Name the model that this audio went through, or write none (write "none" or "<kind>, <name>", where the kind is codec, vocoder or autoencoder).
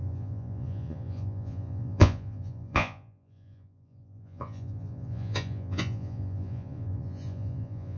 vocoder, Vocos